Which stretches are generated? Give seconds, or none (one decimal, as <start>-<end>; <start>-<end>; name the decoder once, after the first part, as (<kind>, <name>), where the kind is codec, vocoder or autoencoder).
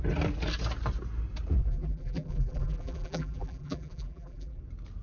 1.6-4.6 (vocoder, BigVGAN v2)